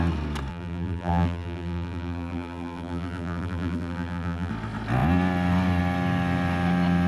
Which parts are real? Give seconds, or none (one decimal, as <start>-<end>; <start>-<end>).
0.0-0.5; 4.5-7.1